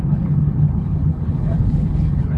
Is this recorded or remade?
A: remade